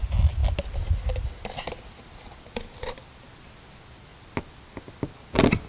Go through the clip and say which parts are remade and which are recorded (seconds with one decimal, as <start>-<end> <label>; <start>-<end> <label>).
0.0-5.7 recorded